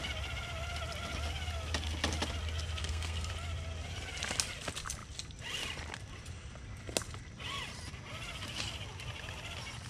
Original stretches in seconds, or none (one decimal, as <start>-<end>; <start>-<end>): 0.0-2.8; 3.3-9.9